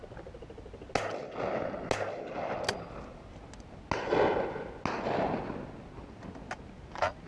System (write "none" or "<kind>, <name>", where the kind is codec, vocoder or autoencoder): none